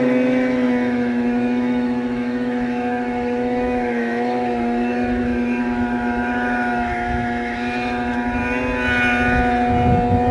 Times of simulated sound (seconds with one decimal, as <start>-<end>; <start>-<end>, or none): 0.0-8.4